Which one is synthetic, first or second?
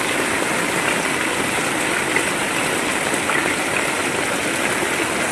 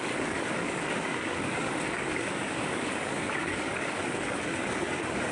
second